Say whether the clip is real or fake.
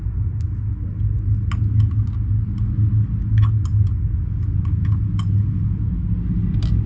real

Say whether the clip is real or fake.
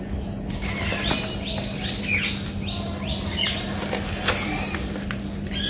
real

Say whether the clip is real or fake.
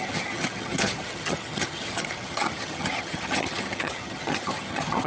fake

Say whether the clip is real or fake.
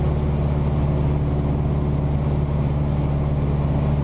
real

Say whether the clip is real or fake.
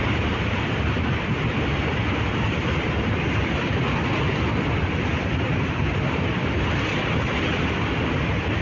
real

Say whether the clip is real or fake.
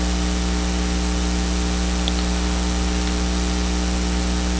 real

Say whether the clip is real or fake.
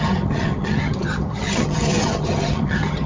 fake